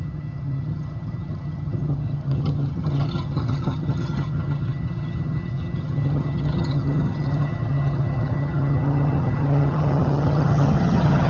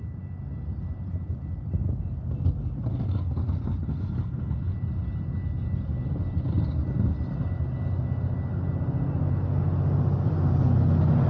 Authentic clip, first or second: second